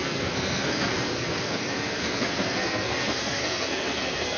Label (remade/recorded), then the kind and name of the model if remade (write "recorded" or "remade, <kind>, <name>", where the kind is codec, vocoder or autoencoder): remade, codec, SNAC